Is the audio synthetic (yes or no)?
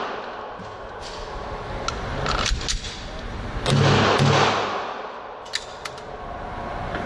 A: no